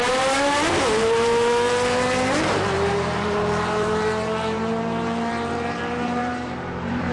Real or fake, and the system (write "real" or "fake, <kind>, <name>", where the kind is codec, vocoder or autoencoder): fake, vocoder, BigVGAN v2